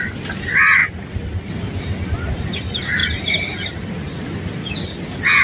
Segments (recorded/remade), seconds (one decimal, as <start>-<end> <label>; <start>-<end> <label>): 0.0-5.4 recorded